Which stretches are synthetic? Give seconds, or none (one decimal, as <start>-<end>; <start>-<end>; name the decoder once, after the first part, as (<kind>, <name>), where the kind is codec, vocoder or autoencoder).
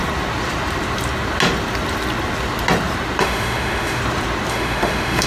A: 3.2-4.0 (autoencoder, DAC-VAE); 4.5-5.3